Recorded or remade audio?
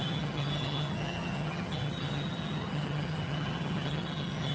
remade